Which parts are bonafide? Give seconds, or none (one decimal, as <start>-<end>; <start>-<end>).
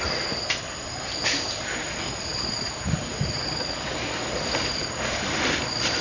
0.0-6.0